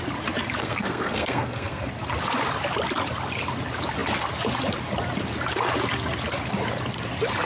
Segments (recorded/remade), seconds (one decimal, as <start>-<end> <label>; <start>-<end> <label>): 0.0-0.6 recorded; 0.6-1.9 remade; 1.9-7.5 recorded

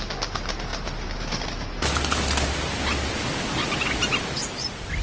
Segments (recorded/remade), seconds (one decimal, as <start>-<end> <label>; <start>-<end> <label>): 0.0-4.4 recorded; 4.4-5.0 remade

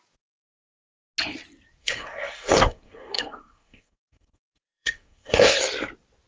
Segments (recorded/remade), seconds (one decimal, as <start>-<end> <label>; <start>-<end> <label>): 0.0-1.8 recorded; 1.8-5.6 remade; 5.6-6.3 recorded

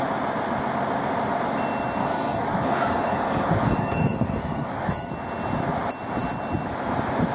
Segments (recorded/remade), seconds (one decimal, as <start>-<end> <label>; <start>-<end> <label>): 0.0-2.0 recorded; 2.0-5.1 remade; 5.1-7.3 recorded

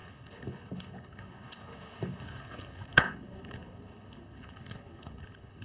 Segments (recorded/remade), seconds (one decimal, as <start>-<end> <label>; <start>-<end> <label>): 0.0-5.6 remade

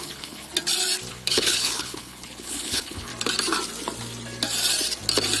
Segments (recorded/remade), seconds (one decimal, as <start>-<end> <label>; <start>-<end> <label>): 0.0-0.5 remade; 0.5-1.1 recorded; 1.1-3.1 remade; 3.1-5.4 recorded